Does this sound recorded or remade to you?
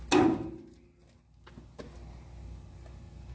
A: recorded